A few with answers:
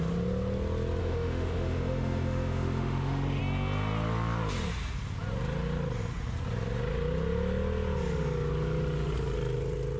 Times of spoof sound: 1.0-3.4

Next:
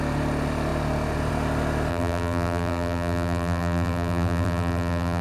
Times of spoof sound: 1.9-5.2

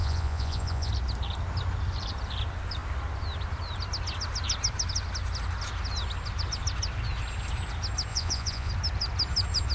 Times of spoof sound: 0.0-0.9; 8.1-8.7

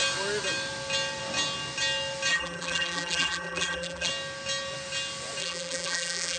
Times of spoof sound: 2.3-4.1; 5.4-6.4

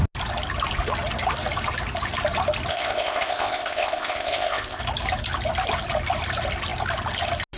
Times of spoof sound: 2.7-4.8